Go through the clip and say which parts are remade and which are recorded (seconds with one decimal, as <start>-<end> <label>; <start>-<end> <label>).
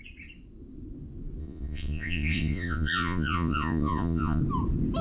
0.0-1.4 recorded; 1.4-4.4 remade; 4.4-5.0 recorded